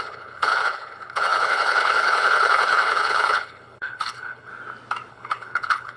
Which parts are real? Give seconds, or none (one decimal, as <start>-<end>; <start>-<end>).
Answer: 4.5-5.1